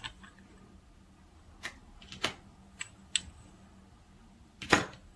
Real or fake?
real